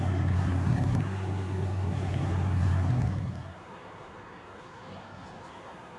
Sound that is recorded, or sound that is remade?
remade